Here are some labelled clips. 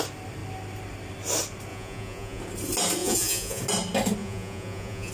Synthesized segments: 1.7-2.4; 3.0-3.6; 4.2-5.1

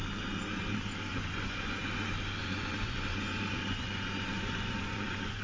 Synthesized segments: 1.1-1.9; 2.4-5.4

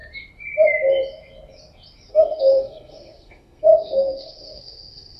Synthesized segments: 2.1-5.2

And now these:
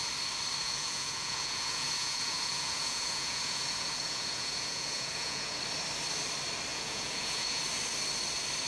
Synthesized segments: 0.6-5.6; 6.7-7.6

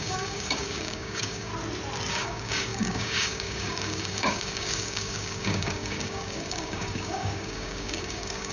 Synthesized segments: 0.0-1.5; 2.1-8.5